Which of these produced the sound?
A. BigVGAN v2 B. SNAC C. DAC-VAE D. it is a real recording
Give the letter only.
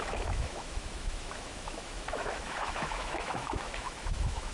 C